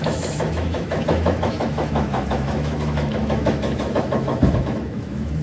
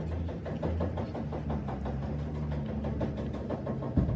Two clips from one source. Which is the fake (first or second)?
first